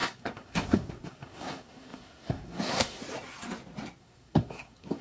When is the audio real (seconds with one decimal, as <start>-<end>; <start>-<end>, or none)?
3.0-4.0